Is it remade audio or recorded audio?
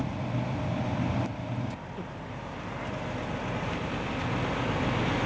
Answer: remade